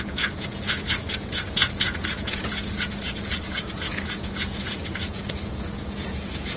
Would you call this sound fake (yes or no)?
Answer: yes